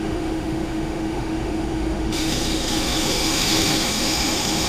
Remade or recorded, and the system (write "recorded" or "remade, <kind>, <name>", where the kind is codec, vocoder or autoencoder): remade, autoencoder, DAC-VAE